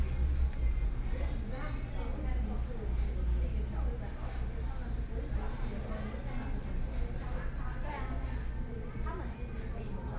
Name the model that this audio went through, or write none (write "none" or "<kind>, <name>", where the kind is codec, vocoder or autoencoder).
none